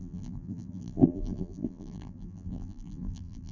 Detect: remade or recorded remade